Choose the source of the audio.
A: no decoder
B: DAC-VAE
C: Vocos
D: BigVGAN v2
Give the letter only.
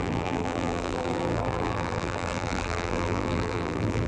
D